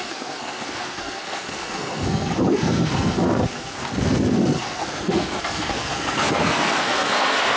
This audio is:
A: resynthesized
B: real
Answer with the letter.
A